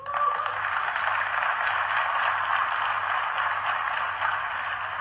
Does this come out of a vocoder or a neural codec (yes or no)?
no